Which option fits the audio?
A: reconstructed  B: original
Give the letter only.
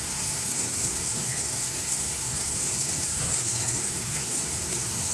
A